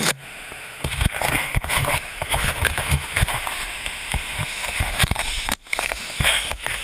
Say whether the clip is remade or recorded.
remade